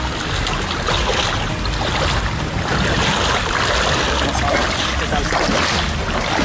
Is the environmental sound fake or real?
real